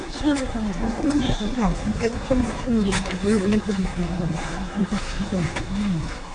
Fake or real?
fake